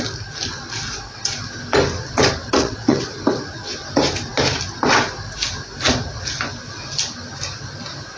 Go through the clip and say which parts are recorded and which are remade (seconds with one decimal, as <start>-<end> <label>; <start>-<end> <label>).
0.0-2.4 recorded; 2.4-3.0 remade; 3.0-8.2 recorded